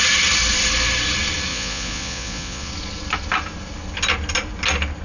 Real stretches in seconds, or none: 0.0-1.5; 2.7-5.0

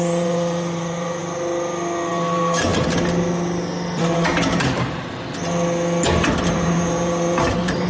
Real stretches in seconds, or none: 1.2-2.1; 2.7-6.4

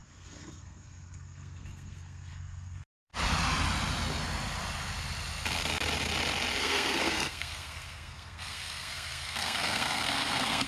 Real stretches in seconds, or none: 3.1-6.6

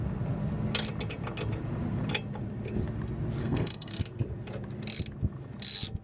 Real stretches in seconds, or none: 0.0-3.4; 4.0-6.0